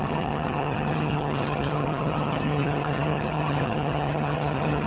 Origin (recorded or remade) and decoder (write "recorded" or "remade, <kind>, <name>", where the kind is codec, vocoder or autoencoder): remade, vocoder, HiFi-GAN